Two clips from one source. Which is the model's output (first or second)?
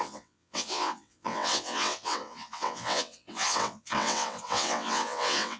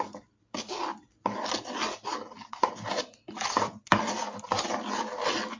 first